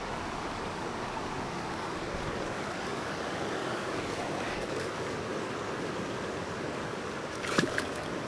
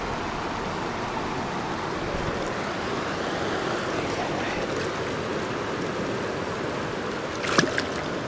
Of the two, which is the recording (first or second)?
second